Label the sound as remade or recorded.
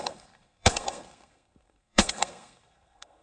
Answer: remade